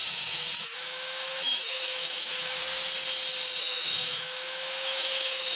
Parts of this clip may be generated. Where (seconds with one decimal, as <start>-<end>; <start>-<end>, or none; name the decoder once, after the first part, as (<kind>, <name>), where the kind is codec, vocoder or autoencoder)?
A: 0.0-2.6 (autoencoder, DAC-VAE); 3.6-5.6